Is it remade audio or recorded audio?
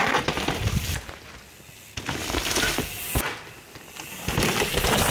recorded